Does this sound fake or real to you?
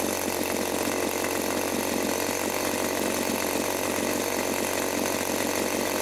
real